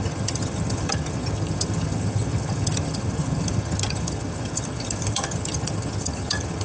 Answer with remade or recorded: remade